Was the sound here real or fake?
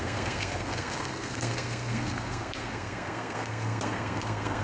fake